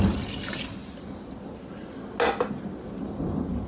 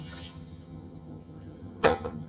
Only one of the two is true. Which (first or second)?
first